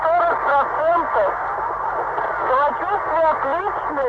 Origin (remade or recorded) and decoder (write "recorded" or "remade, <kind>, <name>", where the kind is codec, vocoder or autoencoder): recorded